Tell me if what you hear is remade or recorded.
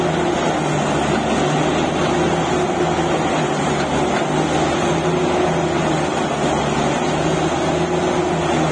recorded